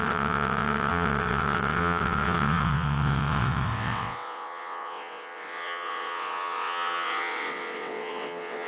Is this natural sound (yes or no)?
no